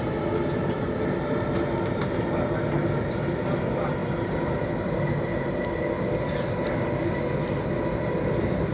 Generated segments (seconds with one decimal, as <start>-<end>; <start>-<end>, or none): none